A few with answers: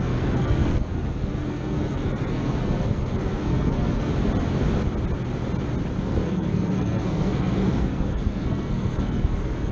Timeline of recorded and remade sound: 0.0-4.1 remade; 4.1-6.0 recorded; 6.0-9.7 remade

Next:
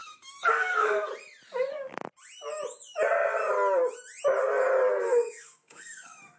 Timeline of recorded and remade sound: 0.0-1.1 remade; 1.1-4.9 recorded; 4.9-6.4 remade

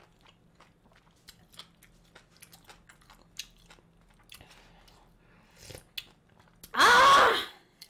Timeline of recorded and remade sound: 0.0-7.3 recorded; 7.3-7.9 remade

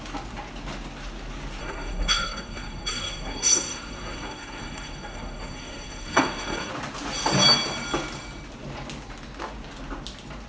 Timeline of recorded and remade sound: 0.0-1.6 recorded; 1.6-6.7 remade; 6.7-10.5 recorded

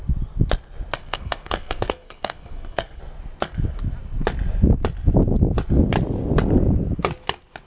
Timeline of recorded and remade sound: 0.0-1.0 recorded; 1.0-3.0 remade; 3.0-7.7 recorded

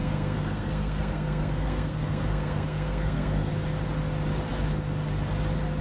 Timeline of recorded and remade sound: 0.0-3.5 remade; 3.5-5.8 recorded

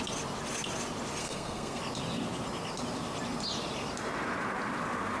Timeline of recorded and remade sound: 0.0-1.2 recorded; 1.2-1.8 remade; 1.8-5.2 recorded